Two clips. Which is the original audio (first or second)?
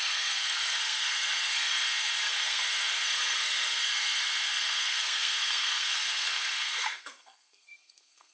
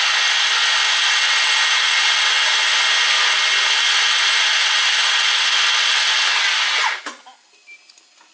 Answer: second